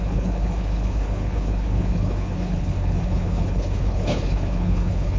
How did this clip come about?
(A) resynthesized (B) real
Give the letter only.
A